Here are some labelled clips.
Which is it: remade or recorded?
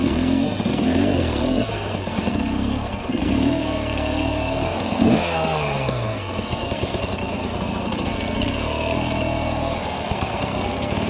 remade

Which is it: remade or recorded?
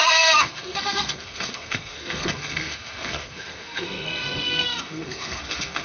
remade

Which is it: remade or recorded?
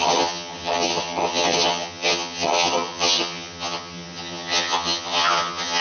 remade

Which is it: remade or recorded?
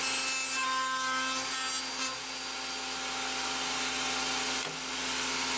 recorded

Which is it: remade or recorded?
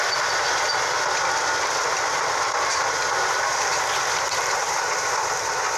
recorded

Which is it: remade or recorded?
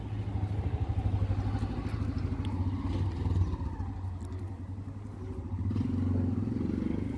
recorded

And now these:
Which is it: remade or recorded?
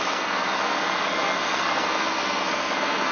remade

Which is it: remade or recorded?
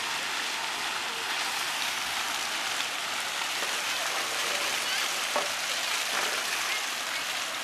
recorded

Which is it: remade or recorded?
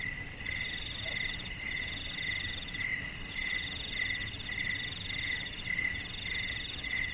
recorded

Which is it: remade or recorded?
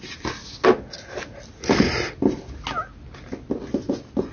recorded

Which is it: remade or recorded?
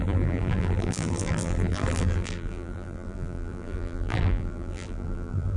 remade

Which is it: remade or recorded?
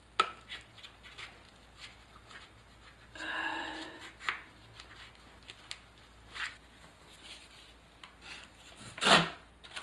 recorded